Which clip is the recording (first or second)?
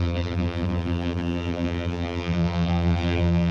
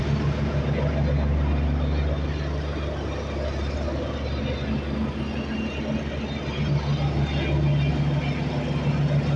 second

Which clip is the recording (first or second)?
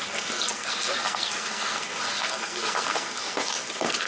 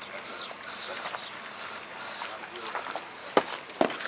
second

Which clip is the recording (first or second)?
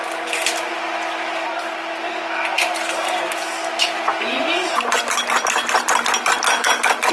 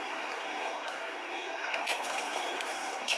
first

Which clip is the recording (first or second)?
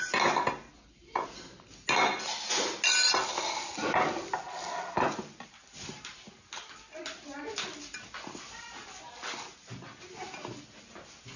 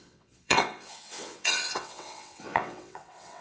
first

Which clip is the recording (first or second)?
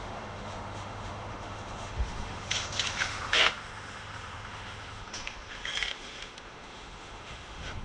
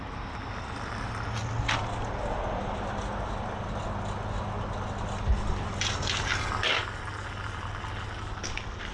second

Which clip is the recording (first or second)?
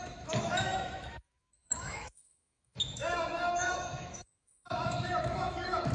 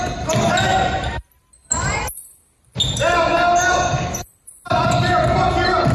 second